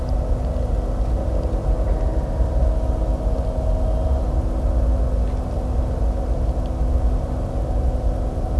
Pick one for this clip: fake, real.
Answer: real